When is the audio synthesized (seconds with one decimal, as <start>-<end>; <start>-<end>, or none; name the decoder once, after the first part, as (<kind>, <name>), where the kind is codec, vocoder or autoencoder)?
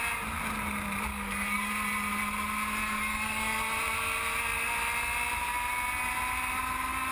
1.1-1.7 (codec, DAC); 2.8-3.5